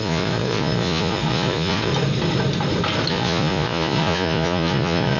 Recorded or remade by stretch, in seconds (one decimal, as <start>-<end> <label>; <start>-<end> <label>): 0.0-1.9 remade; 1.9-3.1 recorded; 3.1-5.2 remade